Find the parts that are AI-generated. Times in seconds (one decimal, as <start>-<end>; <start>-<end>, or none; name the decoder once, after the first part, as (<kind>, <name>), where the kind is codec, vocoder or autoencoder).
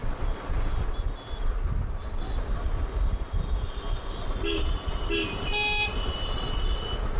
none